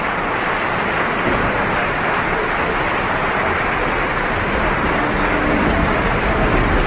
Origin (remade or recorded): recorded